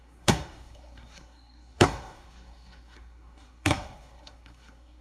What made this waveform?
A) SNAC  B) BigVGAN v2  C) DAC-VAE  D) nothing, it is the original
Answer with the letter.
A